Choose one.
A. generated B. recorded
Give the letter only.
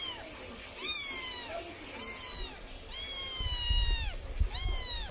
B